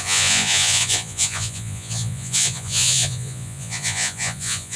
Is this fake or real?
fake